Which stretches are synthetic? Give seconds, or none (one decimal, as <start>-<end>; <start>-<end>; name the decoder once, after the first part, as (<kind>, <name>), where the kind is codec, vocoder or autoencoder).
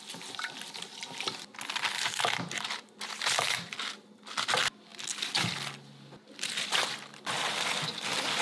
none